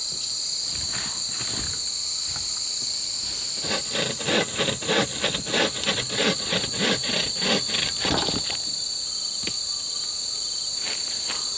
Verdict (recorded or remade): recorded